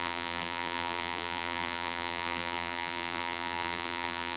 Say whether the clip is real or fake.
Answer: fake